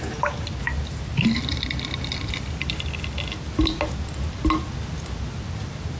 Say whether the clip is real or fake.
real